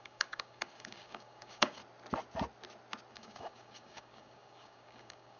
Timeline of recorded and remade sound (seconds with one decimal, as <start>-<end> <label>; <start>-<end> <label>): 0.0-1.8 remade; 1.8-3.1 recorded; 3.1-5.4 remade